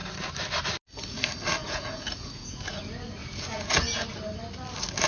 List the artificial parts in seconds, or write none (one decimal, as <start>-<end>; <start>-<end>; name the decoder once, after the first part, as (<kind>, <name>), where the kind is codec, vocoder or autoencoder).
1.6-2.8 (vocoder, Vocos); 3.2-4.0